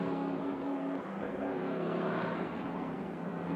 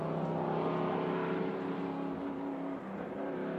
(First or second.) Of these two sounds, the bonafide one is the second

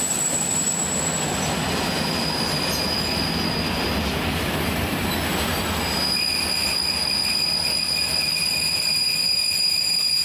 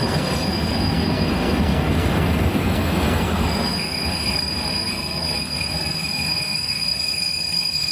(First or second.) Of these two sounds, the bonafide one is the first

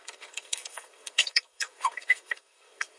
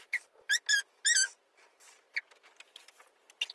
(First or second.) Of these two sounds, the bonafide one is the second